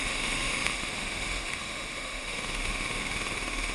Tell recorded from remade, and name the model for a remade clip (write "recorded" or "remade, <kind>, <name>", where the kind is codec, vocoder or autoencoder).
remade, autoencoder, DAC-VAE